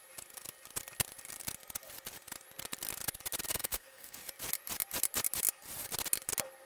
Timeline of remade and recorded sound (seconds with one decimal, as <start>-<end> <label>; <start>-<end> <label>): 0.0-3.5 recorded; 3.5-4.2 remade; 4.2-6.7 recorded